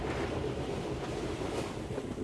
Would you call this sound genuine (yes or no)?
yes